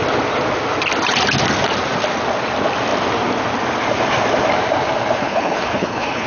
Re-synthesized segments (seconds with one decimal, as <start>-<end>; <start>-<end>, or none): 5.2-6.3